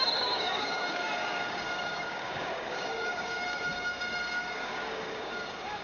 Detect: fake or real fake